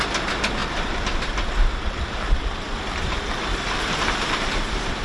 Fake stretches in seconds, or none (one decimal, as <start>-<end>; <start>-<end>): 0.6-3.6